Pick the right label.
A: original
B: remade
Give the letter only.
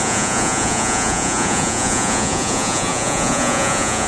B